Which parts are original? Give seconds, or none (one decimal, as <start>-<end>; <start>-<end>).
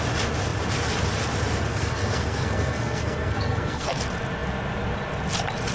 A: 0.0-1.7; 4.0-5.7